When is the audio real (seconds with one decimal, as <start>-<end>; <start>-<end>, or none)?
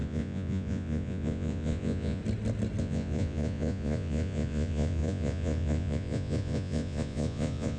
2.2-2.8